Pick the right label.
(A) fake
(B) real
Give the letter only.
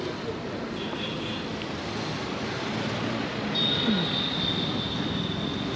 B